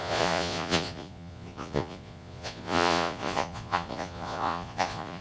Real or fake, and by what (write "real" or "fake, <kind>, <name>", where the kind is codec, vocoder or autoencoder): fake, vocoder, Vocos